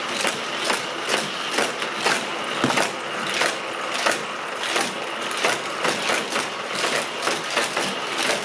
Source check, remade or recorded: recorded